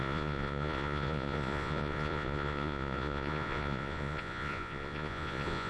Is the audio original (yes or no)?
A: no